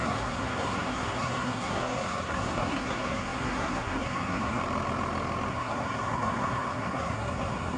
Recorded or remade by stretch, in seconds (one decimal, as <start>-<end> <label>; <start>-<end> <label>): 0.0-4.6 remade; 4.6-5.5 recorded; 5.5-7.8 remade